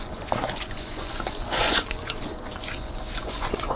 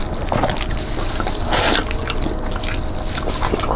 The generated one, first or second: first